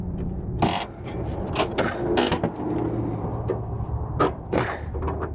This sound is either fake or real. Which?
fake